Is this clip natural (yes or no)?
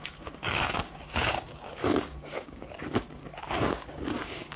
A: no